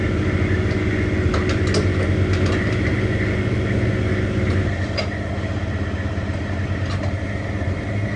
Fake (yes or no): no